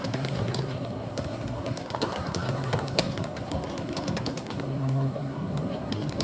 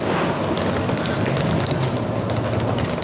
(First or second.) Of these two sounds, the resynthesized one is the first